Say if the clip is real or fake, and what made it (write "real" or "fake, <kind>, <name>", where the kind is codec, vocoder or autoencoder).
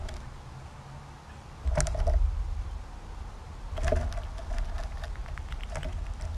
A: real